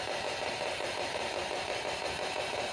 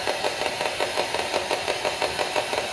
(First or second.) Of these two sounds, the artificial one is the first